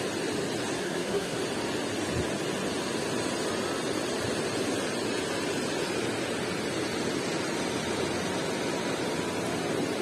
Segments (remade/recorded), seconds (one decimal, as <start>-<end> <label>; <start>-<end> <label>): 0.0-0.8 recorded; 0.8-1.4 remade; 1.4-10.0 recorded

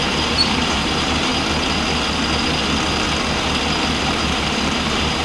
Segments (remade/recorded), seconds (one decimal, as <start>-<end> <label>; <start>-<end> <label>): 0.0-1.3 remade; 1.3-4.0 recorded; 4.0-5.2 remade

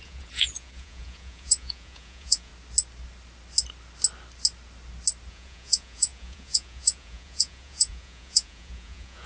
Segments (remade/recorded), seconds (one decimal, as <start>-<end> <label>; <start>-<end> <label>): 0.0-2.5 remade; 2.5-5.3 recorded; 5.3-9.3 remade

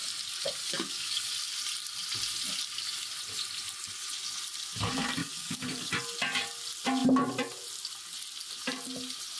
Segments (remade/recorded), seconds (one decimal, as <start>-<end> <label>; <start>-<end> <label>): 0.0-0.6 recorded; 0.6-1.3 remade; 1.3-5.2 recorded; 5.2-5.9 remade; 5.9-9.4 recorded

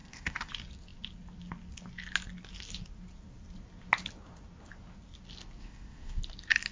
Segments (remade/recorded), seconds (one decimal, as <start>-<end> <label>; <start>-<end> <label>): 0.0-0.5 remade; 0.5-5.6 recorded; 5.6-6.2 remade; 6.2-6.7 recorded